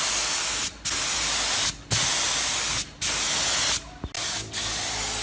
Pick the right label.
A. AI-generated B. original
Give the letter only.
B